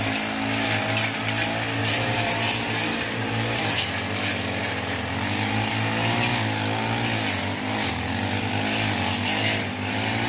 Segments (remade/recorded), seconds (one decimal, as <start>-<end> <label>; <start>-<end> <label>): 0.0-1.8 recorded; 1.8-3.6 remade; 3.6-10.3 recorded